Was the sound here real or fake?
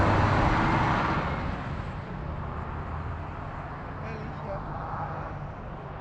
real